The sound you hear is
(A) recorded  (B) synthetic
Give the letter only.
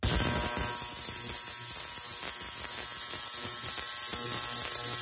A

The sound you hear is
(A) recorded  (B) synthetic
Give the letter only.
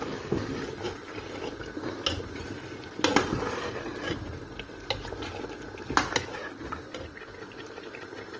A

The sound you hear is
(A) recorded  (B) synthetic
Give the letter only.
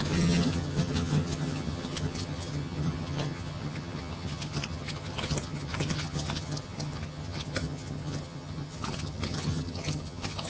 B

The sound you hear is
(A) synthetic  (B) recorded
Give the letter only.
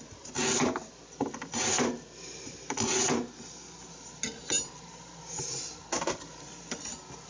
B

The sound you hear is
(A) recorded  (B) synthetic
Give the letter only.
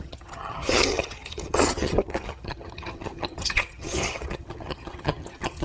B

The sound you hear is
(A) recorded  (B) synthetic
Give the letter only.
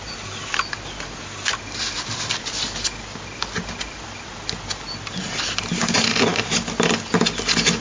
A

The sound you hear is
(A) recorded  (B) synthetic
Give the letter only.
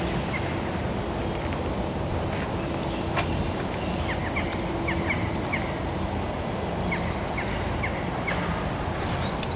A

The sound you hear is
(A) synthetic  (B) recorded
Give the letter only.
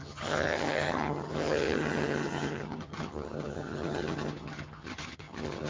A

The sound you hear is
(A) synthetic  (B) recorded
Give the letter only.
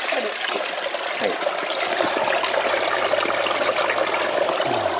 B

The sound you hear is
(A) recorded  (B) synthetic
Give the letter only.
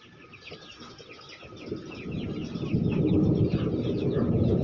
A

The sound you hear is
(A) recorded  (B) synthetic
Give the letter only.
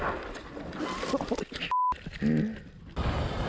A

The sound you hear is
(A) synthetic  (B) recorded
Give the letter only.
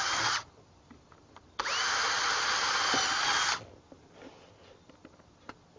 B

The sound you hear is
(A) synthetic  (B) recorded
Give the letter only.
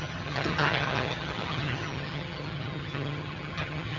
A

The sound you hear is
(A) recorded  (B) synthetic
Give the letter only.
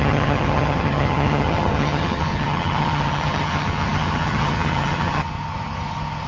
B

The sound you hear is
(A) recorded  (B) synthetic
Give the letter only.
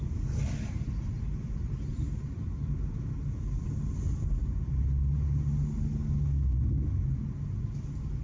A